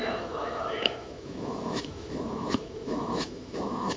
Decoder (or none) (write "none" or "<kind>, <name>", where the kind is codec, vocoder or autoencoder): autoencoder, DAC-VAE